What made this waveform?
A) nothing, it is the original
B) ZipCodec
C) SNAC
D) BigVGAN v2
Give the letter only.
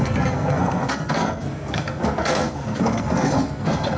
C